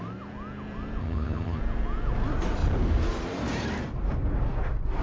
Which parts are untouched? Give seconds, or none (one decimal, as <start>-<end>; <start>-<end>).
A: 0.0-1.0; 1.6-5.0